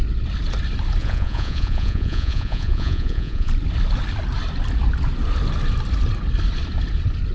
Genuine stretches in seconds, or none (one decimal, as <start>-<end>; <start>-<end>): 0.0-1.0; 3.5-7.3